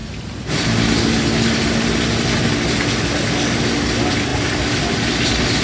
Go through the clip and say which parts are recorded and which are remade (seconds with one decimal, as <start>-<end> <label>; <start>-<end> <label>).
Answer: 0.0-5.6 recorded